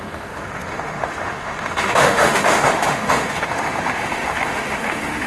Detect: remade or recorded remade